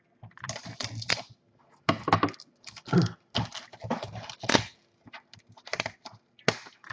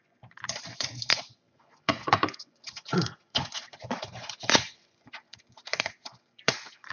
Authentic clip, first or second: first